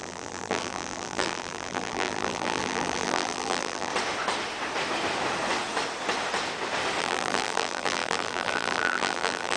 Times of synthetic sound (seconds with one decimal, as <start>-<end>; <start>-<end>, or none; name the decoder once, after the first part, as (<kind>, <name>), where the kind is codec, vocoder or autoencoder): 0.0-3.9 (vocoder, BigVGAN v2); 7.0-9.6